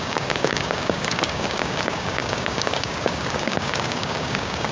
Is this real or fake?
fake